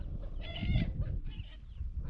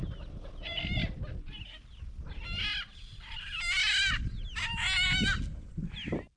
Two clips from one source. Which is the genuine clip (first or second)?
second